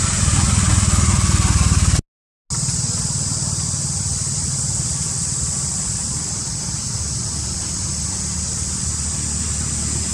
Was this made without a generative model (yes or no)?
yes